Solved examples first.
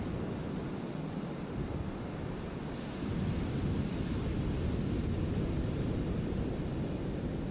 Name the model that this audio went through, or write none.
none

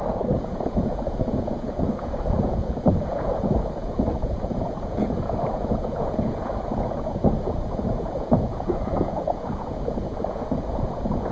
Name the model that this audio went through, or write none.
vocoder, Vocos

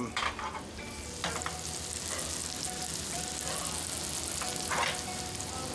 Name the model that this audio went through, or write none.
none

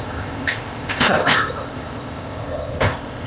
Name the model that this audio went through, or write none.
codec, ZipCodec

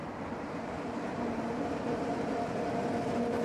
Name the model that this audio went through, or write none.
vocoder, BigVGAN v2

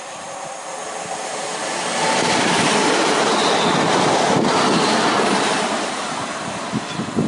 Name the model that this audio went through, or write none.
none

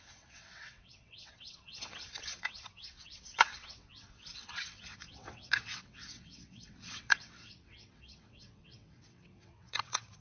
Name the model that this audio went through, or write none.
vocoder, WaveNeXt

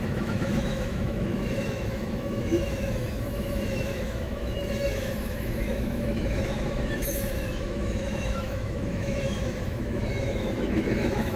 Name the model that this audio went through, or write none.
autoencoder, DAC-VAE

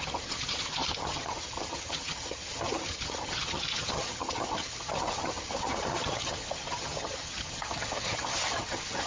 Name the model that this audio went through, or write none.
vocoder, HiFi-GAN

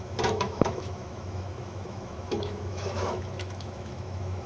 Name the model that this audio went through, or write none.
autoencoder, DAC-VAE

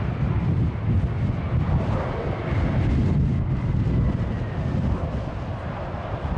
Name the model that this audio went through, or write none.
none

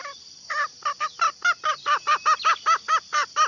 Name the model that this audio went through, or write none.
none